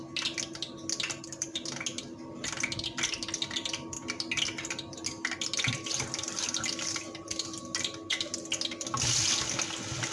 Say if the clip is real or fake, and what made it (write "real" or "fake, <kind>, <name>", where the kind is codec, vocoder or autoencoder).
real